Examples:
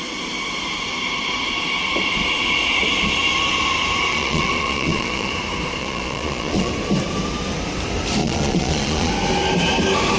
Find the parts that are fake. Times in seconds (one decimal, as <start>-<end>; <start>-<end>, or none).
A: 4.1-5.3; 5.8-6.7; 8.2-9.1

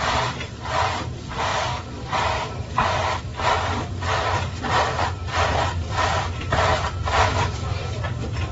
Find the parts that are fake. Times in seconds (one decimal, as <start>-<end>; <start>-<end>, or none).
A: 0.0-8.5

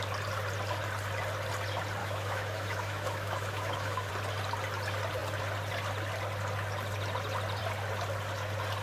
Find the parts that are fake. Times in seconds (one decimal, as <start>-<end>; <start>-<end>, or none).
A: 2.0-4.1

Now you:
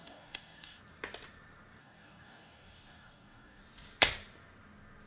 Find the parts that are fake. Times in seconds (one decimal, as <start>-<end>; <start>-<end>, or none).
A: 0.0-0.8; 1.8-3.6

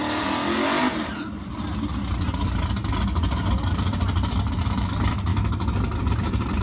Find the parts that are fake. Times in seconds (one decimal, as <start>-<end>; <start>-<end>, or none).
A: 0.8-1.5; 3.7-5.3; 6.1-6.6

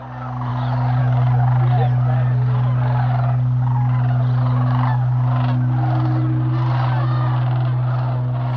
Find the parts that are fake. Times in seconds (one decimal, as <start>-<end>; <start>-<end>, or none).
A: none

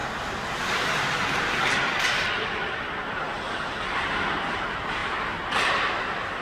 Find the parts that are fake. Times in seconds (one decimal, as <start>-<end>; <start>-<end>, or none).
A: 0.0-3.8